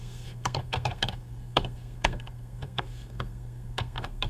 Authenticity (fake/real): fake